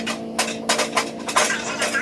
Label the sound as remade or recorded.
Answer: recorded